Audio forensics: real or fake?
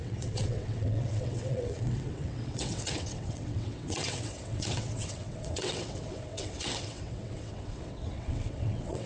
fake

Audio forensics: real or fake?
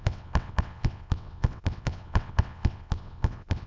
fake